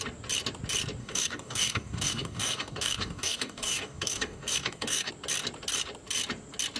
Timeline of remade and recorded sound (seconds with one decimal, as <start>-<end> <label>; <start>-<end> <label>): 0.0-1.0 recorded; 1.0-5.1 remade; 5.1-6.8 recorded

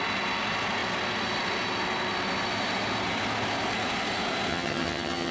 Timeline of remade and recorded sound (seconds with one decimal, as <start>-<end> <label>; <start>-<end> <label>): 0.0-4.5 recorded; 4.5-5.3 remade